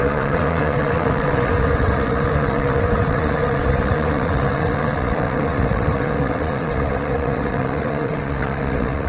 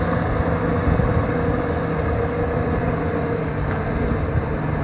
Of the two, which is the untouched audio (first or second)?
second